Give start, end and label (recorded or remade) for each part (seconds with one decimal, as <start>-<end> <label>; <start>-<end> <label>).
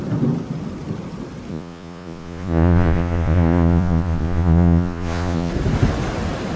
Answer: 0.0-1.5 recorded; 1.5-5.5 remade; 5.5-6.6 recorded